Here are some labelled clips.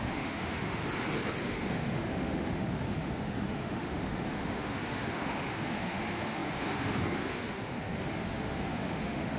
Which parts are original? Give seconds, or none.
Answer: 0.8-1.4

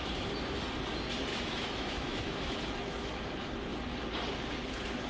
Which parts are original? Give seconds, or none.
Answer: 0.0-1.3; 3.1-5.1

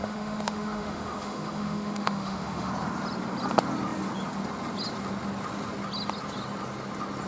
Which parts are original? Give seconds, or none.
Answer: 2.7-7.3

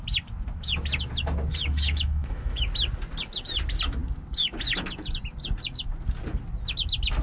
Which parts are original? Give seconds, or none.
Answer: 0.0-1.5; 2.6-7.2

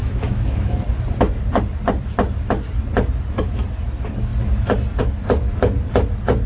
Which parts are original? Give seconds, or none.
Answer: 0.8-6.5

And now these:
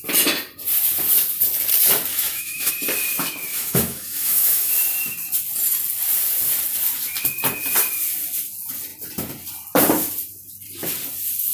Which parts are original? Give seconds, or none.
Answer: 0.0-2.1; 2.7-3.5; 4.7-11.5

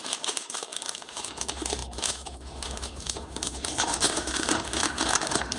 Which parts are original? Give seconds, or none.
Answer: none

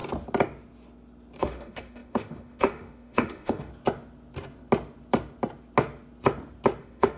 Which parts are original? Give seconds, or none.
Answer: 0.0-1.4; 3.7-6.8